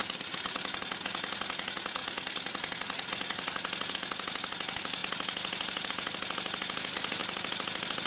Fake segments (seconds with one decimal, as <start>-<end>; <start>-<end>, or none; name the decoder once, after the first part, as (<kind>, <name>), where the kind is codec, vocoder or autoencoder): 0.0-0.8 (vocoder, BigVGAN v2); 2.0-3.9